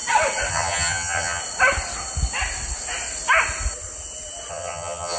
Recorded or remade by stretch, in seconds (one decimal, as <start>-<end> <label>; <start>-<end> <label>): 0.0-0.5 recorded; 0.5-1.4 remade; 1.4-4.5 recorded; 4.5-5.2 remade